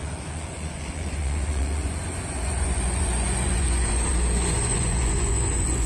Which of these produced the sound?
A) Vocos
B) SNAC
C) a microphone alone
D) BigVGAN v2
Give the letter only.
A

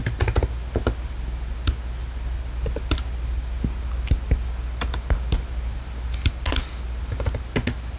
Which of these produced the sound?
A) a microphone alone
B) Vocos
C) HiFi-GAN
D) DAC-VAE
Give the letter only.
A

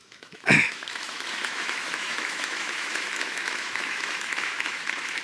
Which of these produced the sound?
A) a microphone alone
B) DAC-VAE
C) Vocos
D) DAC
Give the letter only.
B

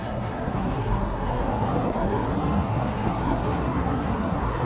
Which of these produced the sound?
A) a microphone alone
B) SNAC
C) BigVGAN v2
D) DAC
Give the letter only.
B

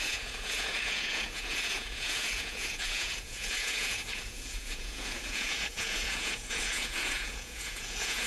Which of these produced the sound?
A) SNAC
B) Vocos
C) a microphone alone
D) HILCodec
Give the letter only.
B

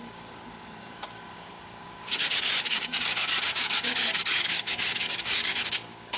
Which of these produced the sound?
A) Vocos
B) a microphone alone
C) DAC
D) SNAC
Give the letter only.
C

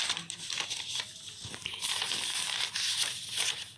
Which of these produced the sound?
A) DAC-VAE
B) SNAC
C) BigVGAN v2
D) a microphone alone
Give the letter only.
D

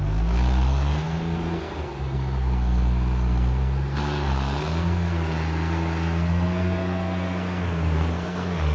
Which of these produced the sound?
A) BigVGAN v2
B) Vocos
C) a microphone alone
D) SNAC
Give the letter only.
D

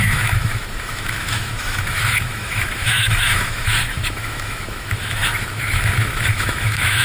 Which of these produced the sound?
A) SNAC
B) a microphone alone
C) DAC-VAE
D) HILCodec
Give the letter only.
C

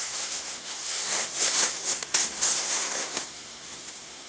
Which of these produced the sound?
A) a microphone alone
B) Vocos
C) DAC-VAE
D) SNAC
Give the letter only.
D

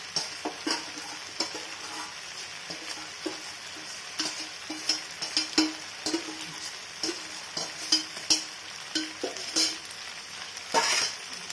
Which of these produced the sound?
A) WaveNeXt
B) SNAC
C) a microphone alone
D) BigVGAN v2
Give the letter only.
C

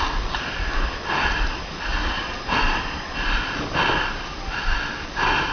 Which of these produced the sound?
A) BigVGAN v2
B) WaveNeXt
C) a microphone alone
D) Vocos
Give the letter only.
C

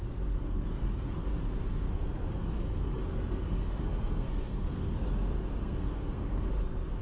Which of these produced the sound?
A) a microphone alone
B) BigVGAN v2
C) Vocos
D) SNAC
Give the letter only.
D